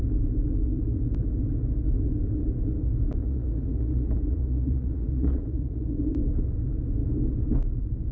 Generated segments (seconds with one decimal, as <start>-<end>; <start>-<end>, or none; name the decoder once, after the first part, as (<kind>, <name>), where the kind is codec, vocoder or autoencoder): 3.2-6.2 (vocoder, Vocos)